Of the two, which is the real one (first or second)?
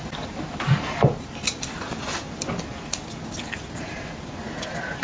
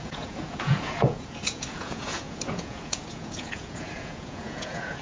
first